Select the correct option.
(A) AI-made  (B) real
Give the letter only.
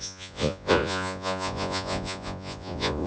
A